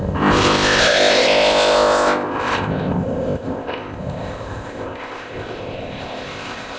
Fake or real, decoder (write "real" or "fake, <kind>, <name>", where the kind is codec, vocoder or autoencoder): fake, codec, ZipCodec